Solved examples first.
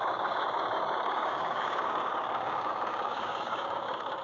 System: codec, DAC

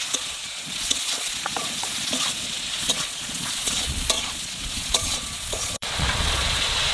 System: vocoder, Vocos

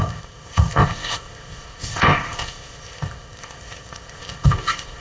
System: codec, ZipCodec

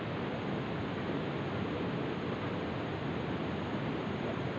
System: none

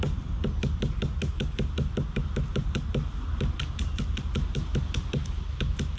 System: none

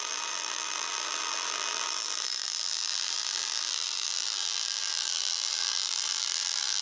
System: vocoder, BigVGAN v2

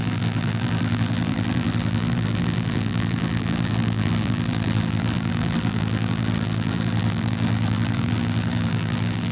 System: vocoder, BigVGAN v2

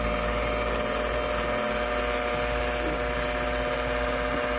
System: none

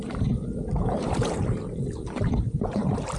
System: vocoder, BigVGAN v2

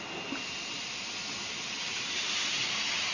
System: none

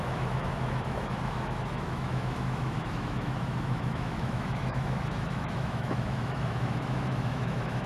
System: autoencoder, DAC-VAE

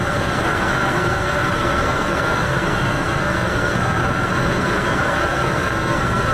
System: codec, SNAC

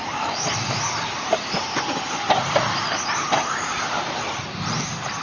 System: vocoder, BigVGAN v2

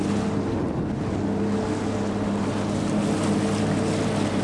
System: none